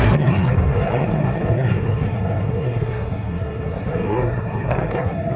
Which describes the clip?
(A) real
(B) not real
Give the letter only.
B